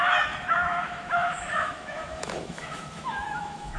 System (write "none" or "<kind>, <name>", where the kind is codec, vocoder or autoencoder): autoencoder, DAC-VAE